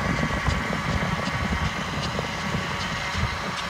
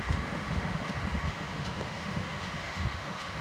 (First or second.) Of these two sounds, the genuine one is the first